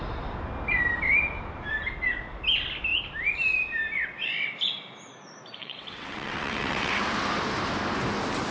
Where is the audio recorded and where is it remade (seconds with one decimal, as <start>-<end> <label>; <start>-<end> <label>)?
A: 0.0-5.6 recorded; 5.6-7.0 remade; 7.0-8.5 recorded

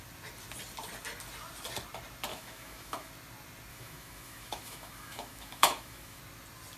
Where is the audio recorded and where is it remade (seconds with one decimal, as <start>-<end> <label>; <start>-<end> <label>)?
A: 0.0-2.3 recorded; 2.3-3.1 remade; 3.1-3.7 recorded; 3.7-6.2 remade; 6.2-6.8 recorded

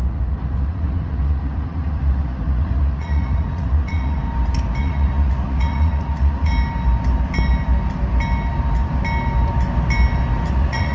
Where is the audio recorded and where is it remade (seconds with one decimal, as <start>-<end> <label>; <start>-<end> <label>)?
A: 0.0-4.2 remade; 4.2-4.8 recorded; 4.8-6.5 remade; 6.5-10.5 recorded; 10.5-10.9 remade

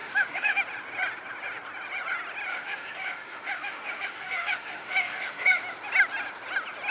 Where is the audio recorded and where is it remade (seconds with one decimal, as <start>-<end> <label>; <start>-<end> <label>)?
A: 0.0-0.6 remade; 0.6-2.5 recorded; 2.5-5.6 remade; 5.6-6.9 recorded

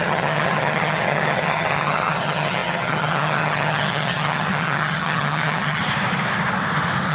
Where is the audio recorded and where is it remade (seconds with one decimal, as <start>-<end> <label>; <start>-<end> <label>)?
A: 0.0-5.8 remade; 5.8-7.1 recorded

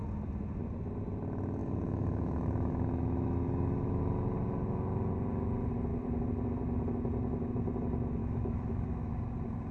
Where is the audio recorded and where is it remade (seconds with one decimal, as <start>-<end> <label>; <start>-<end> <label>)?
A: 0.0-1.6 recorded; 1.6-4.0 remade; 4.0-8.2 recorded; 8.2-9.1 remade; 9.1-9.7 recorded

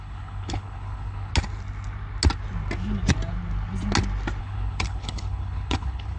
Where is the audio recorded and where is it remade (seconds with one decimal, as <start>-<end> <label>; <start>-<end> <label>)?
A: 0.0-1.3 remade; 1.3-4.4 recorded; 4.4-6.2 remade

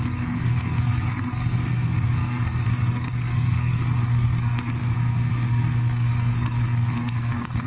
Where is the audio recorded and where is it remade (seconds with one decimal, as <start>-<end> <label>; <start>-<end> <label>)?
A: 0.0-7.7 remade